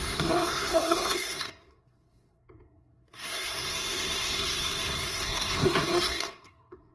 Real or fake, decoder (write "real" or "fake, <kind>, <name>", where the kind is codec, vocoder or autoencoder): fake, codec, SNAC